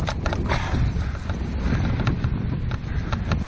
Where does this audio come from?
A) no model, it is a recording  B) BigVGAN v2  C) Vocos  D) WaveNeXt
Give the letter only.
A